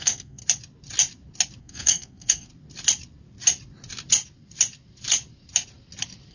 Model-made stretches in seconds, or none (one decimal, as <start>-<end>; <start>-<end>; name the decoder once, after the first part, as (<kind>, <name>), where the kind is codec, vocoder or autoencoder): 0.0-0.4 (codec, SNAC); 1.6-2.5